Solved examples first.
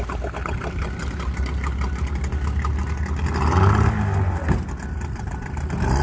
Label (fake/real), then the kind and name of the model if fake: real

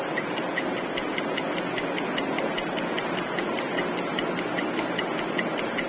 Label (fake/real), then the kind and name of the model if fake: real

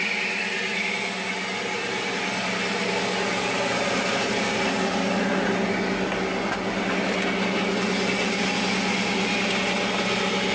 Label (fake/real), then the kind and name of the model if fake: real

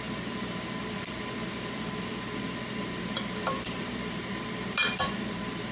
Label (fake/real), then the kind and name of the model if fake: fake, vocoder, BigVGAN v2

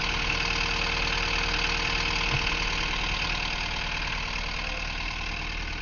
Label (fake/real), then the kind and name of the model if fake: real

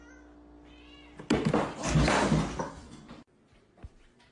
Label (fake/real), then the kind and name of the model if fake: real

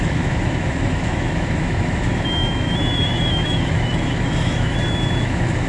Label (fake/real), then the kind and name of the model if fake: fake, autoencoder, DAC-VAE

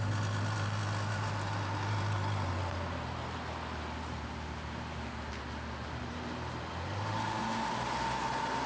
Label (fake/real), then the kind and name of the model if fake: real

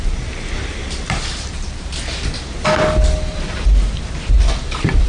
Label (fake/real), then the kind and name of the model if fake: real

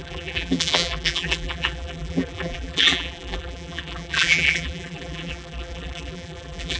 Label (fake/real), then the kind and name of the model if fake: fake, vocoder, BigVGAN v2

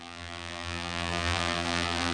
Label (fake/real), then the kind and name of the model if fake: fake, vocoder, BigVGAN v2